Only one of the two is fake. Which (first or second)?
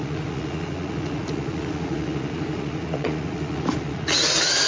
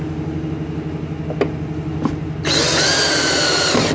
first